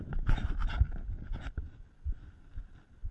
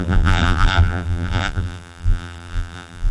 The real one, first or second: first